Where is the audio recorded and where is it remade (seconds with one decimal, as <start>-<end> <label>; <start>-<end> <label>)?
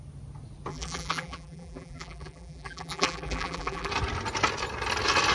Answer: 0.0-0.7 recorded; 0.7-3.9 remade; 3.9-5.3 recorded